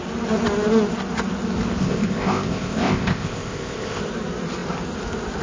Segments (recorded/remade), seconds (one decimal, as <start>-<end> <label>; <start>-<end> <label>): 0.0-1.8 recorded; 1.8-4.0 remade; 4.0-5.4 recorded